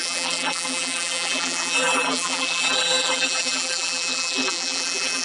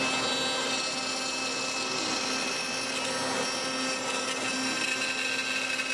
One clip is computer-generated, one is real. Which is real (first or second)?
second